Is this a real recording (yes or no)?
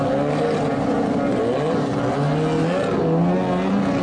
yes